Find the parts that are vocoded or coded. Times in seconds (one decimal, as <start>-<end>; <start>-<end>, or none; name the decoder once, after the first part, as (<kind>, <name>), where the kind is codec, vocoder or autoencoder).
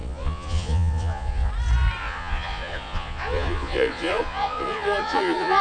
0.0-1.5 (vocoder, Vocos); 2.0-5.6